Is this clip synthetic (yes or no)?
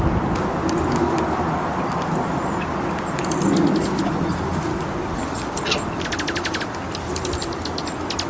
no